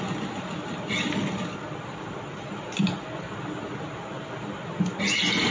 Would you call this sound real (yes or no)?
yes